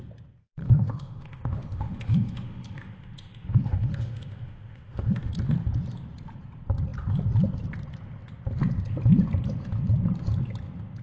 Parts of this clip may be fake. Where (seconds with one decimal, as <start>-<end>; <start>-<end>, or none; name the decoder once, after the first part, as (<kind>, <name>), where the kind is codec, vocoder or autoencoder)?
0.6-5.3 (autoencoder, DAC-VAE)

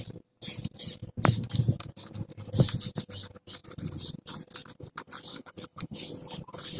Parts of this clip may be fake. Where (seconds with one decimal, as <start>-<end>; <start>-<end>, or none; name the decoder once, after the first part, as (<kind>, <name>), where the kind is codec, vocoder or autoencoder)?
5.3-6.1 (codec, HILCodec)

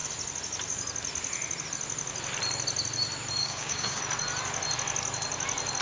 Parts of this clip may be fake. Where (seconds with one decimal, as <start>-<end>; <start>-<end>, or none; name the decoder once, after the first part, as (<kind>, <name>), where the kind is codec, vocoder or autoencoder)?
3.4-4.0 (codec, DAC)